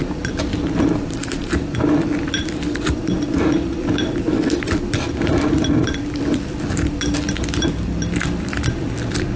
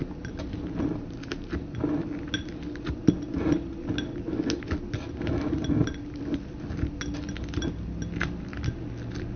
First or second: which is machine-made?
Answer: first